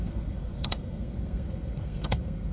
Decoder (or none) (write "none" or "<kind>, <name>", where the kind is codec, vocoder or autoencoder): codec, SNAC